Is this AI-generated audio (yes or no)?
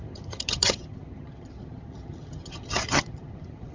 yes